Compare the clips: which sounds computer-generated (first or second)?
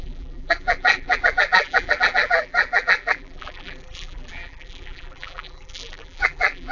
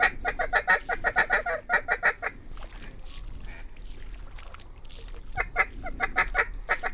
first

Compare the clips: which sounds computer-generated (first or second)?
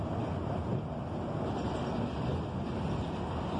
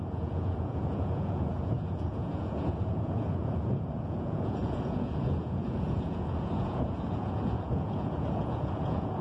second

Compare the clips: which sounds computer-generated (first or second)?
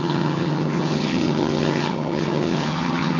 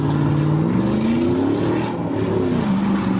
first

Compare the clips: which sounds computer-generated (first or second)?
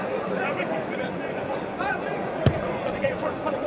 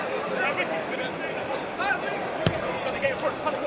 first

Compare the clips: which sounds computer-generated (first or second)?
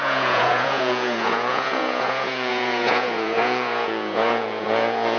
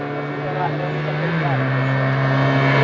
first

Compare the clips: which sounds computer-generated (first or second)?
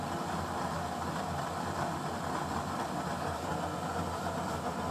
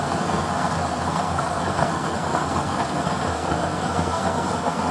second